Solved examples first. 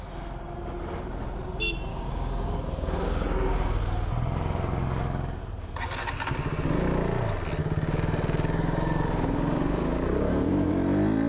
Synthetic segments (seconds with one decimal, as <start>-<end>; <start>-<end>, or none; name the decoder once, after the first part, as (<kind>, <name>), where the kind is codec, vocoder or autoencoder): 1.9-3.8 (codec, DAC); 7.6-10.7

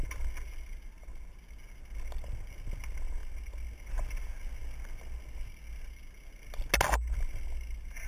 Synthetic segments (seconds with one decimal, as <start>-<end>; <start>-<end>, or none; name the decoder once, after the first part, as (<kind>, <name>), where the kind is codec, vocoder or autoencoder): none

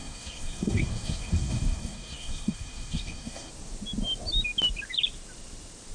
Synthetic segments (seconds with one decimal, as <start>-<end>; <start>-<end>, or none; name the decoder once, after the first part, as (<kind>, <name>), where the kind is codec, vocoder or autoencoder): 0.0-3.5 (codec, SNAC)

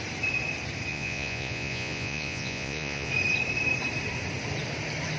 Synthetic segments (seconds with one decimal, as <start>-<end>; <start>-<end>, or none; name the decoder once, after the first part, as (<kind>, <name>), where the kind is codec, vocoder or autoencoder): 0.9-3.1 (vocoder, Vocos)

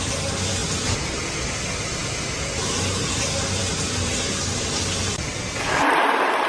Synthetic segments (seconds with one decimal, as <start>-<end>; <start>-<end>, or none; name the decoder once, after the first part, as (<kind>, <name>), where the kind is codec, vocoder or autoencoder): none

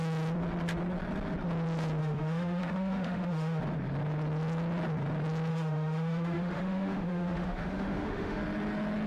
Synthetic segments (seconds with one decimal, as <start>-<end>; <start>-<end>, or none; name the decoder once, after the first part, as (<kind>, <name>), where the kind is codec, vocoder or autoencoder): 2.0-3.6 (autoencoder, DAC-VAE); 5.5-8.4

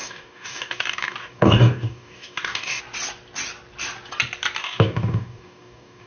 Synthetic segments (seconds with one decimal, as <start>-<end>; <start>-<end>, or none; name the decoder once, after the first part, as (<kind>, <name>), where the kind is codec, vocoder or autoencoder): 0.0-2.8 (codec, DAC); 4.6-6.1